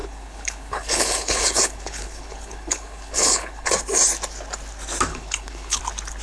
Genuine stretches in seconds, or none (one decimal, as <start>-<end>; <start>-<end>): 3.7-5.1; 5.8-6.2